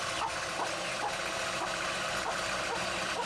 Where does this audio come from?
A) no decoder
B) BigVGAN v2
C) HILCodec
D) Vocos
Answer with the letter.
B